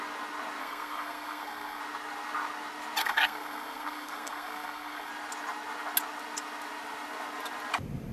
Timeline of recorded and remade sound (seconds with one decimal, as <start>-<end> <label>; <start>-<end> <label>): 0.0-0.6 recorded; 0.6-1.8 remade; 1.8-3.0 recorded; 3.0-5.1 remade; 5.1-8.1 recorded